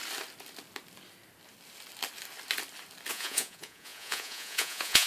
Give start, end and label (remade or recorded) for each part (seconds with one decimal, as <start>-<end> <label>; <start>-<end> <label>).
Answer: 0.0-3.1 recorded; 3.1-5.1 remade